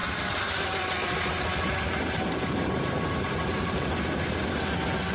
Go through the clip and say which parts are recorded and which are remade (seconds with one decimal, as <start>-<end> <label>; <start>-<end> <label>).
0.0-5.1 recorded